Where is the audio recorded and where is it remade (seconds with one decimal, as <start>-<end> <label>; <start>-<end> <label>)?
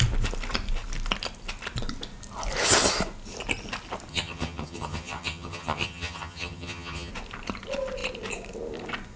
0.0-4.1 recorded; 4.1-7.1 remade; 7.1-9.2 recorded